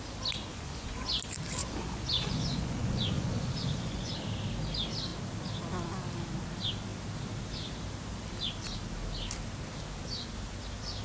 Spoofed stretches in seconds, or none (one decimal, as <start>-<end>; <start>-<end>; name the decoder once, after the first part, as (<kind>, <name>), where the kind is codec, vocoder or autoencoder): 0.5-1.2 (vocoder, Vocos); 1.6-4.1